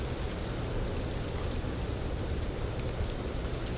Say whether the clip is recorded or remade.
recorded